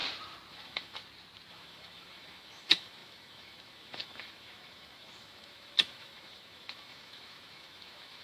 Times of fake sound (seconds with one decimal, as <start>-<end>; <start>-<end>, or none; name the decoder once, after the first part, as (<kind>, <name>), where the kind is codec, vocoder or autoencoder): 0.5-1.0 (autoencoder, DAC-VAE); 1.5-8.2